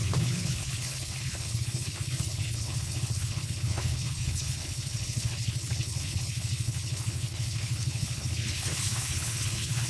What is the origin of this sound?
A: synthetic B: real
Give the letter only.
A